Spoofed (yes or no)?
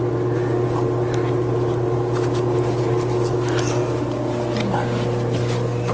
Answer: no